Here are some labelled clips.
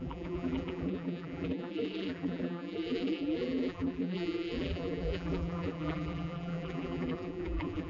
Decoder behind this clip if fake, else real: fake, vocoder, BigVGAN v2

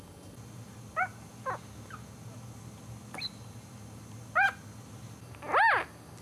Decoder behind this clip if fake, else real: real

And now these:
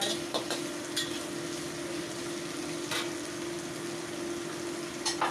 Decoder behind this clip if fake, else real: real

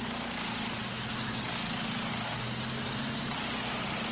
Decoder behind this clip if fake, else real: real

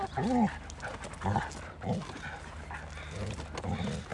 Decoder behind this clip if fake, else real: real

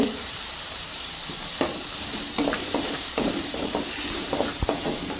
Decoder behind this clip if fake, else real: fake, vocoder, BigVGAN v2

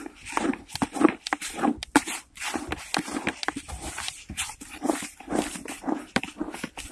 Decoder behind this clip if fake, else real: fake, vocoder, BigVGAN v2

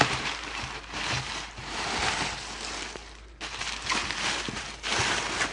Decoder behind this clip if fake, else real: fake, vocoder, BigVGAN v2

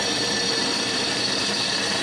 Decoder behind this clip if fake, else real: fake, vocoder, BigVGAN v2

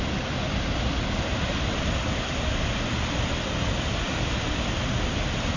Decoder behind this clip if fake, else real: real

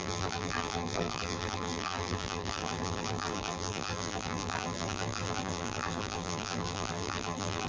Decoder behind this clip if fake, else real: fake, vocoder, BigVGAN v2